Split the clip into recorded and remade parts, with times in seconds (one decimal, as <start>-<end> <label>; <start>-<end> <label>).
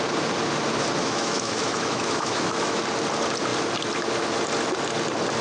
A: 0.0-1.0 recorded; 1.0-2.8 remade; 2.8-5.4 recorded